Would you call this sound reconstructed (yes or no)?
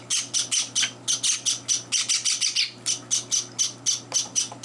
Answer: no